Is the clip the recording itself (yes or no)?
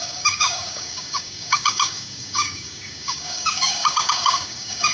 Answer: no